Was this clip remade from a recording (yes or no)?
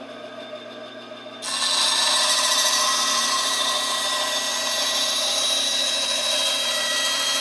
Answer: no